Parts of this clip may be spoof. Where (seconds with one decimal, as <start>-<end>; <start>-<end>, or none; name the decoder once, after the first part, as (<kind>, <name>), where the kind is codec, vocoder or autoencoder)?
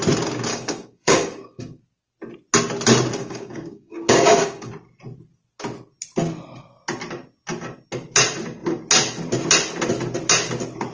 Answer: 0.5-1.8 (codec, DAC); 3.2-4.7